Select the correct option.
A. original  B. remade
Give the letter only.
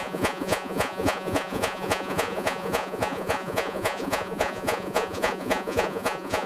B